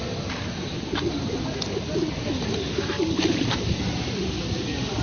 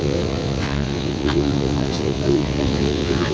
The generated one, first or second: second